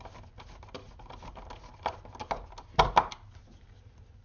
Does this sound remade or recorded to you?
recorded